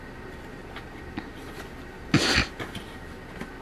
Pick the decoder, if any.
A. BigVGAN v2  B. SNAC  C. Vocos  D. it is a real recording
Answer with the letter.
D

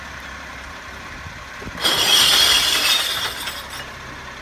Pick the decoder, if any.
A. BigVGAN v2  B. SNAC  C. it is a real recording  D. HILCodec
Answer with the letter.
A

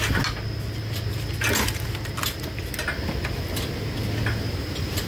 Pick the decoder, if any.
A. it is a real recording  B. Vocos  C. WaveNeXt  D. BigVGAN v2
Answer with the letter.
A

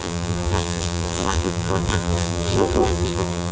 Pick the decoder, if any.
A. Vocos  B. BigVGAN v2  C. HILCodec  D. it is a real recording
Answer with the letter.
B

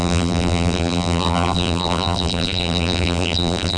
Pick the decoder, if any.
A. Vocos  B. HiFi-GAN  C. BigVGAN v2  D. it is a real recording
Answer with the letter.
C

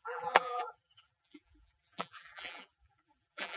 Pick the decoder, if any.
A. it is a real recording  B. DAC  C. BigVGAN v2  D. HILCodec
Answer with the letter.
C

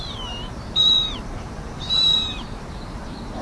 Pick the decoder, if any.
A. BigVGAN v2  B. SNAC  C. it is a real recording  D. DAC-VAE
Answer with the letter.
A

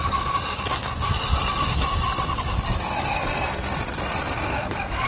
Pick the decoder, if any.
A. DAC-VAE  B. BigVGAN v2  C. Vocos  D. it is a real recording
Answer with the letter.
B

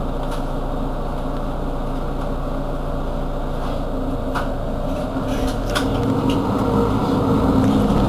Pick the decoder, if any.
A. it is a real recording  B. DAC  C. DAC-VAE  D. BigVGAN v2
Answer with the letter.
A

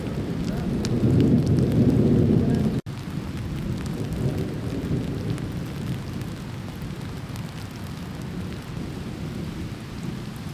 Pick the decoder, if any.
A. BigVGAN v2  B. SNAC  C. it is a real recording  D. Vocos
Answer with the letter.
C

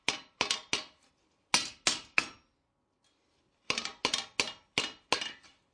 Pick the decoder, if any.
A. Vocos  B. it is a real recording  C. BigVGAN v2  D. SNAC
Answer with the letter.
B